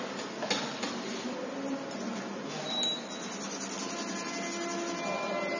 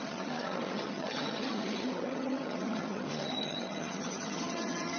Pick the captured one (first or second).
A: first